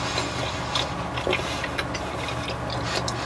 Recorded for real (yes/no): yes